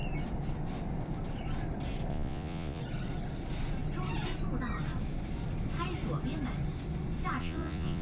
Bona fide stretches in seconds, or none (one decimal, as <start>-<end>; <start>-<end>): 0.0-2.1; 2.8-7.4